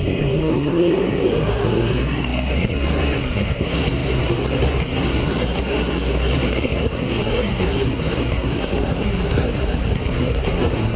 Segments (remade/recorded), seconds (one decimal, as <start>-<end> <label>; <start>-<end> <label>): 0.0-11.0 remade